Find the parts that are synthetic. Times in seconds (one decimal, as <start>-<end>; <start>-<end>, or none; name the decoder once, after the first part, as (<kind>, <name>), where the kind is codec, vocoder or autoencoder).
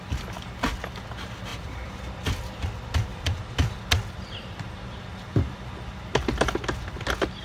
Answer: 1.5-2.1 (vocoder, BigVGAN v2); 3.1-3.8